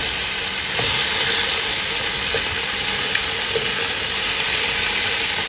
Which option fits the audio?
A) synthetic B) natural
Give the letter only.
B